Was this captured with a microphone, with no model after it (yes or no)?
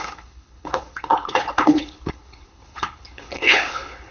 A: no